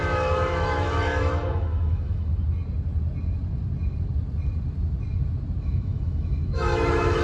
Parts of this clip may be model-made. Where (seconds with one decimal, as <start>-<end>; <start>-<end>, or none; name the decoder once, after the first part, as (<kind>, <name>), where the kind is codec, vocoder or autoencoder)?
0.0-2.3 (autoencoder, DAC-VAE); 5.6-7.2